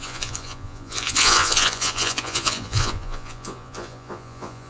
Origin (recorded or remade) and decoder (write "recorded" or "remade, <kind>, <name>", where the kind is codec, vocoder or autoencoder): remade, vocoder, Vocos